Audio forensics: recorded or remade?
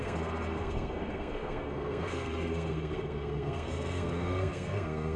remade